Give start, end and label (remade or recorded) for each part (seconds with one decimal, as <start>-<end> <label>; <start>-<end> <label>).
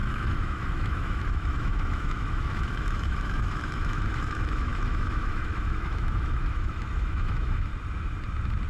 0.0-7.7 remade; 7.7-8.7 recorded